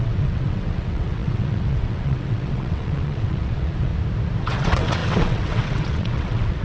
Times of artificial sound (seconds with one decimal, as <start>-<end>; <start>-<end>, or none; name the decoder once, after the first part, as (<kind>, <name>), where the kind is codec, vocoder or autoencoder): 0.0-3.9 (vocoder, WaveNeXt); 4.4-6.6